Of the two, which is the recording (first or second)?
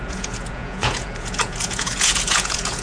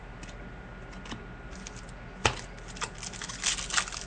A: second